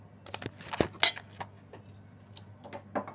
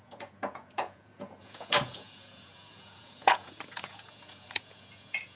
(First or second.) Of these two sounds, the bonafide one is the first